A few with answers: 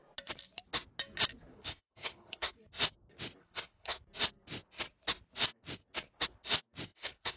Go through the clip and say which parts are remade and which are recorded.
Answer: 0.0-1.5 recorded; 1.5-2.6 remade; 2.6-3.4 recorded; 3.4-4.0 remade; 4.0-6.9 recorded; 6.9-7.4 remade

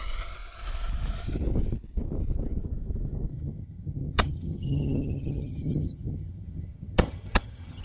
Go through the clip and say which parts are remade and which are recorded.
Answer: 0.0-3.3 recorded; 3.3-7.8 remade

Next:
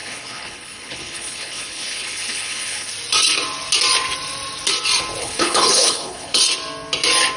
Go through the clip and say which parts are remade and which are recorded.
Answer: 0.0-2.9 remade; 2.9-5.2 recorded; 5.2-6.4 remade; 6.4-7.4 recorded

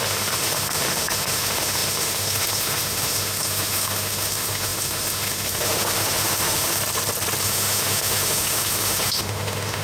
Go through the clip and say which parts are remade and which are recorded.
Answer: 0.0-6.8 remade; 6.8-7.4 recorded; 7.4-9.8 remade

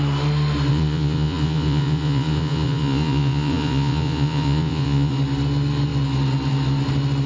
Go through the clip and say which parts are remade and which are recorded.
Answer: 0.0-0.7 recorded; 0.7-5.1 remade; 5.1-7.3 recorded

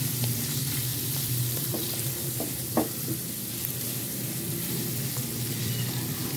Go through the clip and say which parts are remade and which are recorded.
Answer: 0.0-6.4 remade